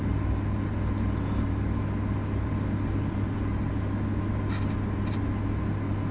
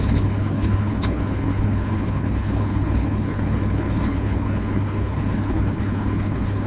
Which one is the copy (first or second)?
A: second